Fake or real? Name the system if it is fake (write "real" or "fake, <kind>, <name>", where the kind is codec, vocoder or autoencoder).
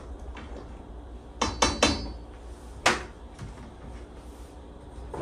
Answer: real